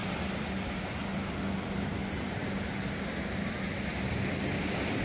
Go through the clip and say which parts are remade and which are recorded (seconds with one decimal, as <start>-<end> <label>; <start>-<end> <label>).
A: 0.0-5.0 recorded

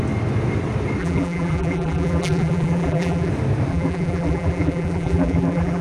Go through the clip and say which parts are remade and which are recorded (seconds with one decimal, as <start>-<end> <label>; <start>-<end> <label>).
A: 0.0-1.0 recorded; 1.0-3.3 remade; 3.3-3.7 recorded; 3.7-5.8 remade

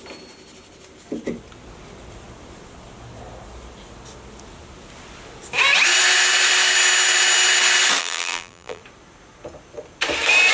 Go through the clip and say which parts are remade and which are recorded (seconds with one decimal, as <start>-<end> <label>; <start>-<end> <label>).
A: 0.0-8.0 recorded; 8.0-8.8 remade; 8.8-10.5 recorded

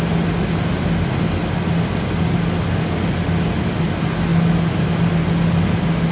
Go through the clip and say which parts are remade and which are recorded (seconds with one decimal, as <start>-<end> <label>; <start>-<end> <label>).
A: 0.0-6.1 recorded